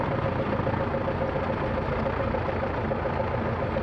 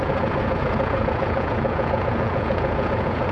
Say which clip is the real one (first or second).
first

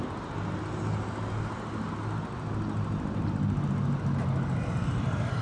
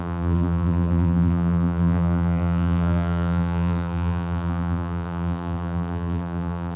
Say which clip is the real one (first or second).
first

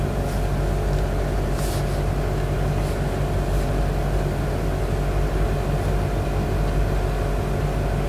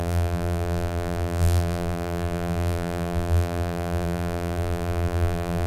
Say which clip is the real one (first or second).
first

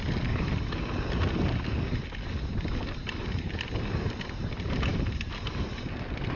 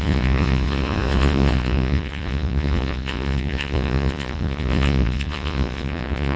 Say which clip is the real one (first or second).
first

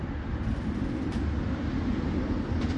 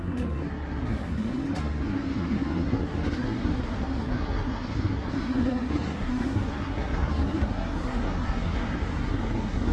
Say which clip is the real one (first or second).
first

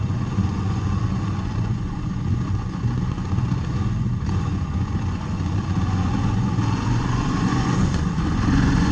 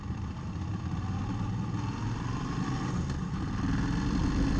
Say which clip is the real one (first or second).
second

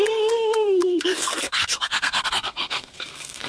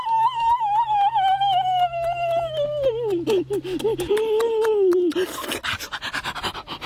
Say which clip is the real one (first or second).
second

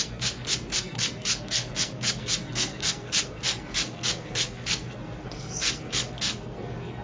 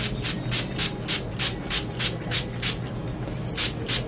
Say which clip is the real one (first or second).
second